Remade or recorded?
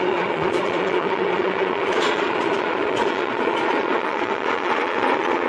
remade